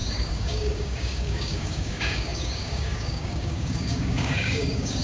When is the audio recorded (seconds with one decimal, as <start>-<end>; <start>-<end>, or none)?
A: none